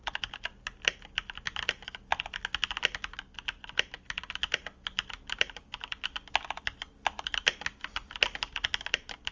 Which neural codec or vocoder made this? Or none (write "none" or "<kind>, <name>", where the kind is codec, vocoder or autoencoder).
none